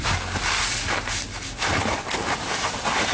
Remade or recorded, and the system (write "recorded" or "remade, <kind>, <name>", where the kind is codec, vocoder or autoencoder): recorded